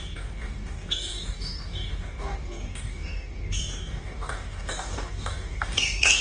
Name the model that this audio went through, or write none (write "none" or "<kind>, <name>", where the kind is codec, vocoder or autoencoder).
codec, DAC